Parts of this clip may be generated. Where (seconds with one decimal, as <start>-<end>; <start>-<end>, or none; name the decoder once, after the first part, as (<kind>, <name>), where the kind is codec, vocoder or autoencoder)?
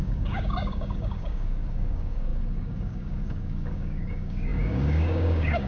0.0-5.7 (codec, DAC)